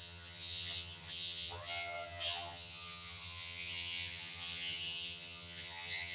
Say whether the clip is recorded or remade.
remade